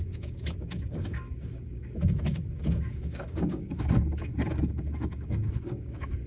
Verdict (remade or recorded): remade